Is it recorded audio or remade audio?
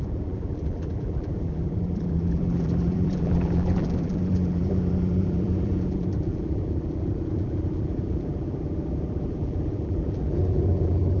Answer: remade